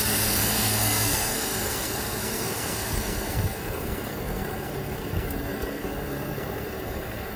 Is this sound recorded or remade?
remade